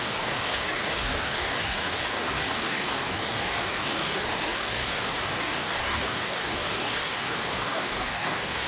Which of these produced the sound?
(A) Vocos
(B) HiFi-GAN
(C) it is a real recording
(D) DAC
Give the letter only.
D